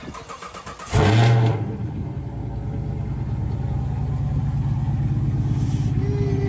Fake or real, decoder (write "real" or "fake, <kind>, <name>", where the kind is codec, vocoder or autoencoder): real